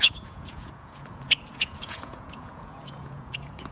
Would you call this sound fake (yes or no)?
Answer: yes